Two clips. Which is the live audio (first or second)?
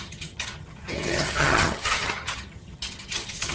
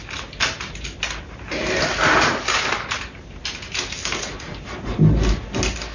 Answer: second